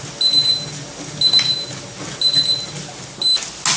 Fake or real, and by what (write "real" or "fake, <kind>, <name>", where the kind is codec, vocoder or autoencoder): real